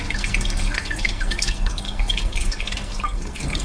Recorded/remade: remade